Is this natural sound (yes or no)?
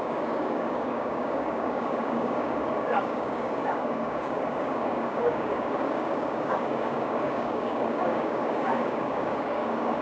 no